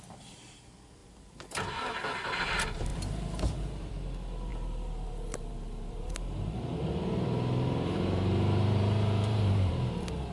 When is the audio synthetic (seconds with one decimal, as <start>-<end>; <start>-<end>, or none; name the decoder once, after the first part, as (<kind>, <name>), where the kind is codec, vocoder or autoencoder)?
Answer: 1.0-1.8 (vocoder, BigVGAN v2); 2.9-3.9; 4.5-9.7